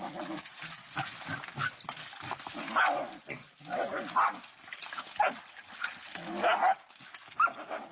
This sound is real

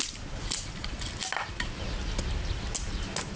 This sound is real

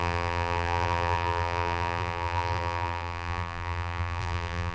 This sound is fake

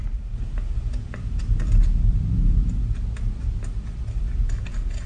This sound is real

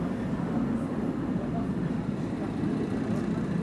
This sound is real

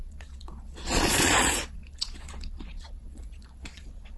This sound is fake